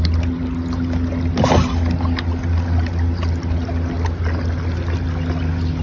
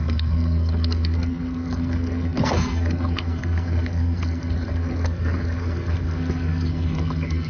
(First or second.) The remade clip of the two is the second